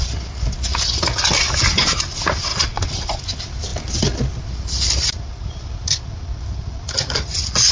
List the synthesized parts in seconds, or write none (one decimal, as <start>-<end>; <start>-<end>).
2.5-3.2

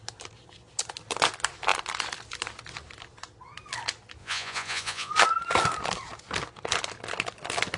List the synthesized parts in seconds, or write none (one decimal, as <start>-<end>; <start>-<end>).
4.2-5.1

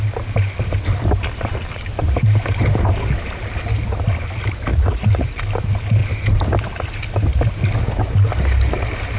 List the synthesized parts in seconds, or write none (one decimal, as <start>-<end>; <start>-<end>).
4.7-5.4

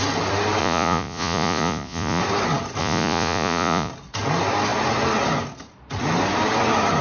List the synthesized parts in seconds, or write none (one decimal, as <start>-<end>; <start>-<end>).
0.6-2.2; 2.8-3.9

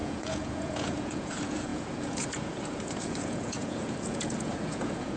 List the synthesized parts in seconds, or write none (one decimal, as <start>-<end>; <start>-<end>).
0.0-5.2